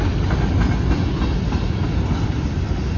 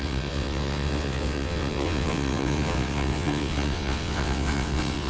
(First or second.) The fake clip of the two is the second